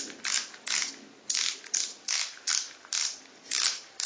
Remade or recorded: recorded